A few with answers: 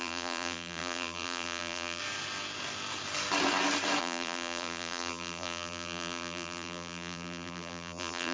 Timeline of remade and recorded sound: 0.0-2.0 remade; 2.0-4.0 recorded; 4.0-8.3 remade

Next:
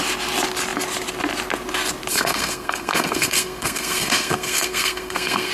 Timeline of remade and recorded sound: 0.0-2.1 recorded; 2.1-5.5 remade